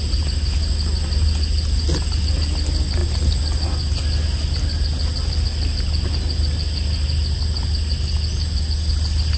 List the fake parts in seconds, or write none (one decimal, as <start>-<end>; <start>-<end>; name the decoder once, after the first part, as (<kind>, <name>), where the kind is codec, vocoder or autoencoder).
none